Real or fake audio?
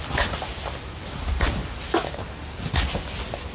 real